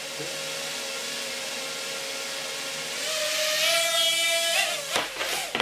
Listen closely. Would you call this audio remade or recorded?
recorded